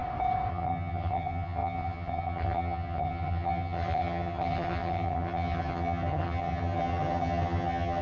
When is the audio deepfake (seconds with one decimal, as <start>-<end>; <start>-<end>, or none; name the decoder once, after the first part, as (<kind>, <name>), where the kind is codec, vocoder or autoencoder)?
0.5-8.0 (vocoder, HiFi-GAN)